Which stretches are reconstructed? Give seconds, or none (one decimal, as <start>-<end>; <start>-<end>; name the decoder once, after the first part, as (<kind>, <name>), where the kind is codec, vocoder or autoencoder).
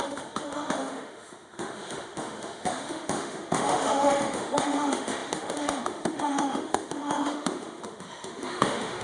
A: 0.0-9.0 (autoencoder, DAC-VAE)